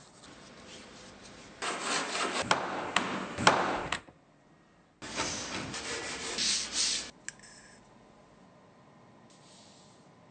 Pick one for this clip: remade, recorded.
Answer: recorded